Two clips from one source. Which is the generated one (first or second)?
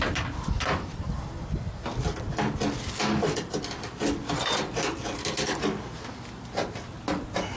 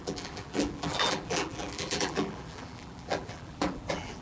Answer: second